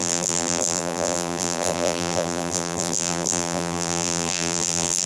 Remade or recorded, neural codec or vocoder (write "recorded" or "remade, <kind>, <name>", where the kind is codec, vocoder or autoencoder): remade, vocoder, BigVGAN v2